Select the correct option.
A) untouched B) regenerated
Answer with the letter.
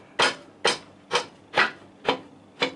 A